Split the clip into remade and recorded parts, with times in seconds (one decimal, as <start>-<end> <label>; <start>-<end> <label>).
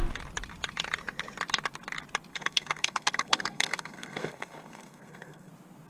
0.0-2.3 recorded; 2.3-5.5 remade; 5.5-5.9 recorded